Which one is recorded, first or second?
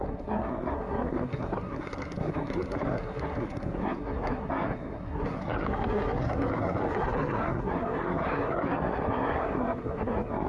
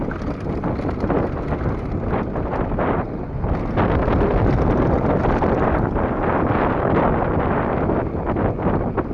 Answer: second